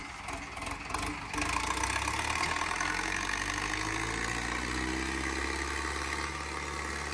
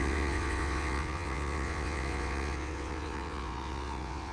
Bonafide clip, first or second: first